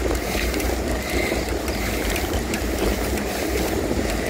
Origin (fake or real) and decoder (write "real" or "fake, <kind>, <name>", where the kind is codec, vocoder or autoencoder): fake, vocoder, BigVGAN v2